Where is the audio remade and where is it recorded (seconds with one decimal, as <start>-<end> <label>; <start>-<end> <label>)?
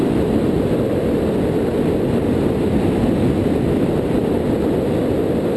0.0-5.6 recorded